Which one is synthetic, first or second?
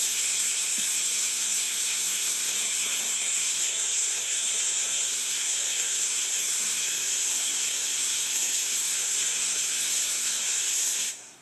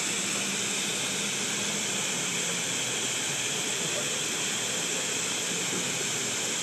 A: first